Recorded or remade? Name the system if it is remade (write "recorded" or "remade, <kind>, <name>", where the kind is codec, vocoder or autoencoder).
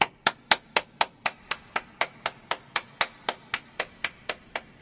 recorded